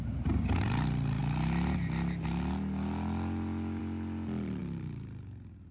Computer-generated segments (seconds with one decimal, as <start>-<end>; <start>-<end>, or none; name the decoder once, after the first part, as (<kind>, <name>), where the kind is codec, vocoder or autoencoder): none